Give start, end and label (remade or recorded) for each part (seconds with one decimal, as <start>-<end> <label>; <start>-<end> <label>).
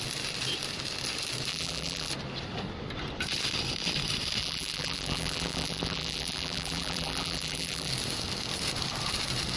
0.0-1.5 recorded; 1.5-2.1 remade; 2.1-4.4 recorded; 4.4-7.9 remade; 7.9-9.6 recorded